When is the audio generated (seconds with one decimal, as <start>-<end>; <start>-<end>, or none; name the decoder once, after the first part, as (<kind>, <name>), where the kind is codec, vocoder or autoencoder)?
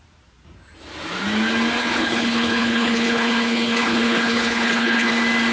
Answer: 1.8-5.1 (codec, HILCodec)